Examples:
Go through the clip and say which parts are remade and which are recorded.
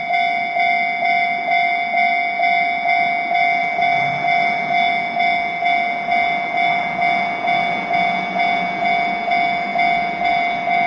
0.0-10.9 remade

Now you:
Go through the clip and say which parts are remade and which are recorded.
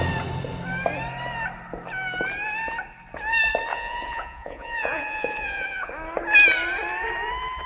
0.0-3.7 recorded; 3.7-5.9 remade; 5.9-7.7 recorded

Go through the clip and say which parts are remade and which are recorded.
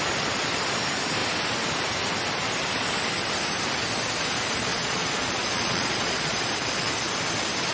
0.0-4.7 recorded; 4.7-6.4 remade; 6.4-7.7 recorded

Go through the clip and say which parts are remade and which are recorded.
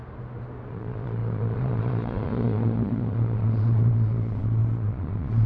0.0-0.7 recorded; 0.7-5.5 remade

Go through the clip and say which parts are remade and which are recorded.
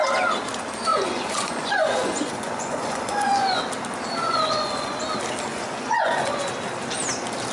0.0-0.9 recorded; 0.9-3.6 remade; 3.6-4.2 recorded; 4.2-5.0 remade; 5.0-5.5 recorded; 5.5-6.5 remade; 6.5-7.5 recorded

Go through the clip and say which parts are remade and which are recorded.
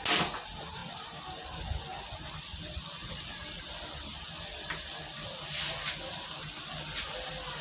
0.0-7.6 recorded